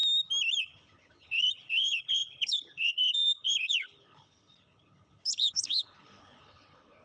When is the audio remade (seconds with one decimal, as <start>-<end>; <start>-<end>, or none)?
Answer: 0.6-7.0